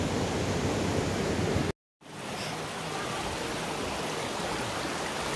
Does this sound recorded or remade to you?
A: recorded